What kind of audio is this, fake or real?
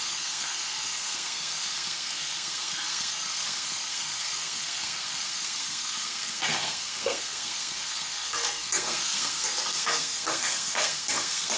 fake